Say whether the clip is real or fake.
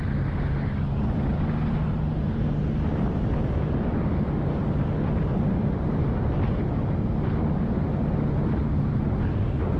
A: real